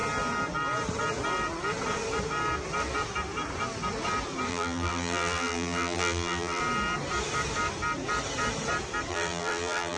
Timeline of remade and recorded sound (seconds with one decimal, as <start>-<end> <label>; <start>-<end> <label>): 0.0-4.5 recorded; 4.5-6.6 remade; 6.6-9.1 recorded; 9.1-10.0 remade